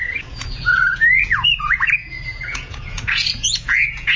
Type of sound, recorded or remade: remade